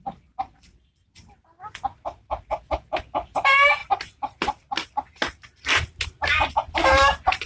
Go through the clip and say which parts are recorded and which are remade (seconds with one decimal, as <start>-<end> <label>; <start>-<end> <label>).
0.0-7.5 recorded